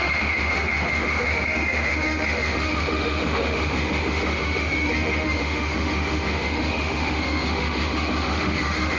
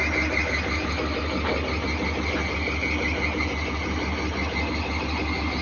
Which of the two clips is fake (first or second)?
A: first